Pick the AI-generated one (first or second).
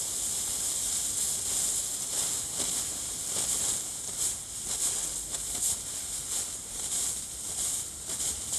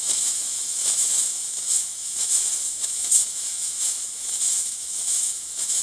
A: second